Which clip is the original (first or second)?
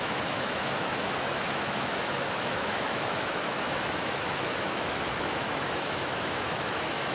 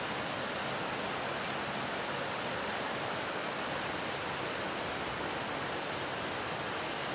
second